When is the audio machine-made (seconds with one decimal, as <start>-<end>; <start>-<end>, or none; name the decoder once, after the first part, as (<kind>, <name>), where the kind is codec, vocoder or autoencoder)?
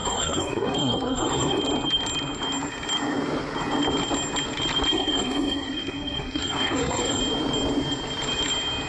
0.0-1.6 (codec, SNAC); 4.9-7.2